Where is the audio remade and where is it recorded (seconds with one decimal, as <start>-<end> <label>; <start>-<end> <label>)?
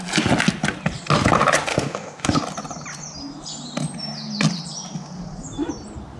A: 0.0-1.7 recorded; 1.7-2.4 remade; 2.4-6.2 recorded